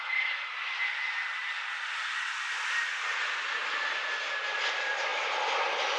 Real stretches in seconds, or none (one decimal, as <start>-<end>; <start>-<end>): 1.4-4.6